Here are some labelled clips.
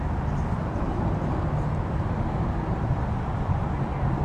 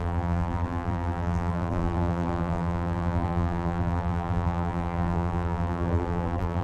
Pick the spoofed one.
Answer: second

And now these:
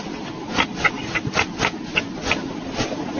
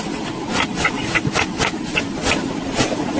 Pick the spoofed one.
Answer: second